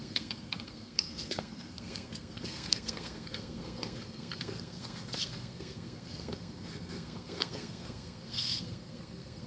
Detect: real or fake fake